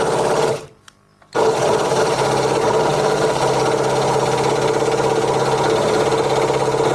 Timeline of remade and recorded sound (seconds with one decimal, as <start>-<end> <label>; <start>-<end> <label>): 0.0-6.9 recorded